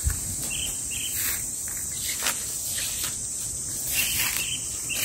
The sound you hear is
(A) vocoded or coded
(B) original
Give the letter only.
B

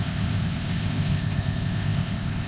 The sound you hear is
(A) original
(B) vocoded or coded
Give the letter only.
B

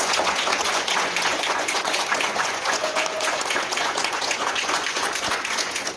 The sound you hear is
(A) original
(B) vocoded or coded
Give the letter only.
B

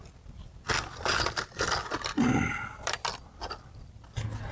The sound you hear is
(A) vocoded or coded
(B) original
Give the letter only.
B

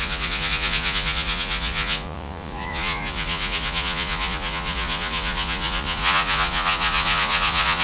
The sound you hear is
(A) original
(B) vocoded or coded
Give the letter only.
B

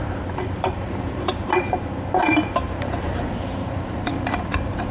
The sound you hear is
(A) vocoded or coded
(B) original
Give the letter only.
A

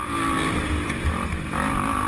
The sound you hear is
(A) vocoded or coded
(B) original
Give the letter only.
B